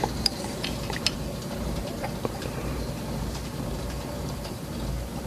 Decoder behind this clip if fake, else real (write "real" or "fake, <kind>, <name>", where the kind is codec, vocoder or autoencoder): fake, vocoder, BigVGAN v2